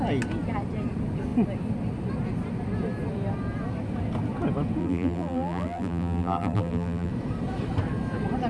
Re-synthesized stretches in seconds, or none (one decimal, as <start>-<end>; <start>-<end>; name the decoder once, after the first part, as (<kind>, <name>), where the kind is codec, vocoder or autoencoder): 4.8-7.1 (vocoder, BigVGAN v2)